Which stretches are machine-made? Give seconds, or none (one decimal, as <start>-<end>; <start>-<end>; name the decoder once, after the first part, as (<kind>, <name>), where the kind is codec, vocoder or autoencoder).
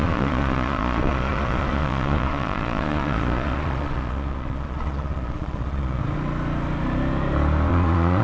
0.0-6.0 (vocoder, Vocos); 7.7-8.2